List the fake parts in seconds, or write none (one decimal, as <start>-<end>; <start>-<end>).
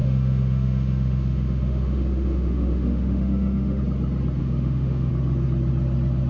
0.0-3.8; 4.4-5.1